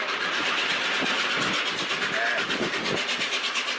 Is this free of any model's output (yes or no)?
yes